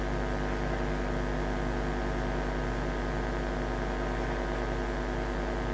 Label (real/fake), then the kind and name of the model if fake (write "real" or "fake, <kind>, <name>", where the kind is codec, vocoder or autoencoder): real